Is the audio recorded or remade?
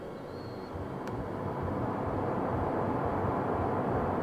recorded